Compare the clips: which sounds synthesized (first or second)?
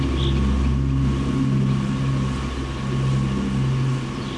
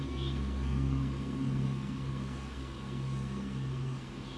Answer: second